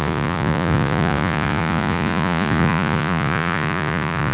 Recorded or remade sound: remade